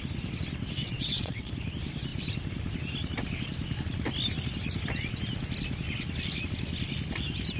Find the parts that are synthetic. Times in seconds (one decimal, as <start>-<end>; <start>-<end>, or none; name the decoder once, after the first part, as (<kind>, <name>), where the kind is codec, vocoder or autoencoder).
0.8-1.5 (vocoder, WaveNeXt)